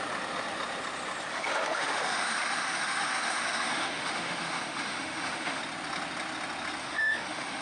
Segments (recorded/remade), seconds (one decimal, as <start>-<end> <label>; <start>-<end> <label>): 0.0-1.3 recorded; 1.3-5.6 remade; 5.6-6.8 recorded; 6.8-7.6 remade